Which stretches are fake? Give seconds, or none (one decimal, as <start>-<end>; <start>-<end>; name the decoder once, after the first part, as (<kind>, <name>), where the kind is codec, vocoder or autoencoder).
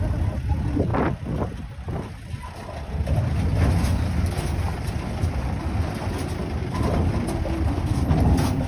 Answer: none